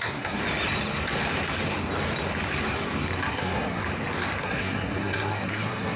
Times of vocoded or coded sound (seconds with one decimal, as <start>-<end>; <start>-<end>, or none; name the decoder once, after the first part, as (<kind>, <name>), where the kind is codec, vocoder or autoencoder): 0.0-0.4 (codec, SNAC); 3.3-3.8; 4.4-6.0